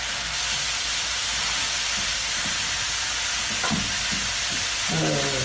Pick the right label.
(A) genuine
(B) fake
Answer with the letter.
A